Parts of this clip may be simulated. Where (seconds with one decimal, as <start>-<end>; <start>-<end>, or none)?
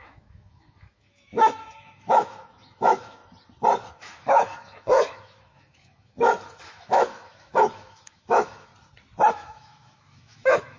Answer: 0.0-3.2; 3.9-8.7; 9.3-10.8